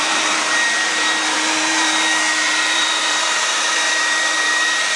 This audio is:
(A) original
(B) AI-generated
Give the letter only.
B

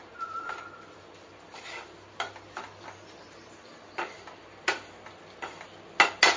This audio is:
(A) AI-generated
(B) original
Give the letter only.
B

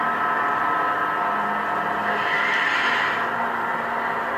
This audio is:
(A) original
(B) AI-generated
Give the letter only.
A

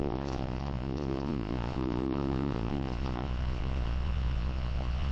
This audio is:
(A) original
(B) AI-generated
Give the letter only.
B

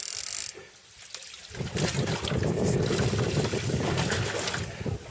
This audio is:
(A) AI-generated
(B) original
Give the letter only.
B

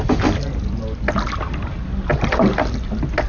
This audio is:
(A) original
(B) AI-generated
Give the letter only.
A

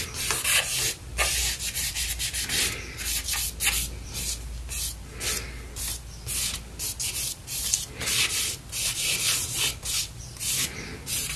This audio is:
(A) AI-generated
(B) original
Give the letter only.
B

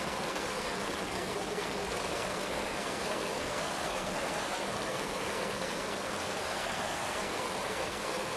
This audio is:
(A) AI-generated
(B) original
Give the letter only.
A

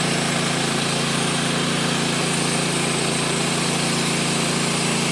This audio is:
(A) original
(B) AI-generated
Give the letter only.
A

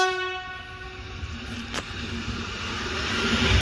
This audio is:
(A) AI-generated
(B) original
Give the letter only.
B